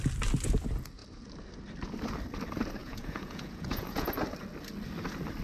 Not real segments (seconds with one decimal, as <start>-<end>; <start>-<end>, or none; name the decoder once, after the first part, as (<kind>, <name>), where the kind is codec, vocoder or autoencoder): 2.8-4.1 (vocoder, Vocos)